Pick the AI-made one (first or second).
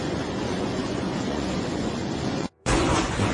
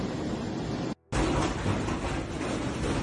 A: first